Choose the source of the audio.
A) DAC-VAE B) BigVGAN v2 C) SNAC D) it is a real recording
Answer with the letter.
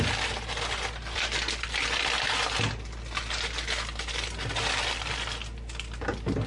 D